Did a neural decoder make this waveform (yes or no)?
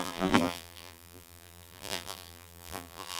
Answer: yes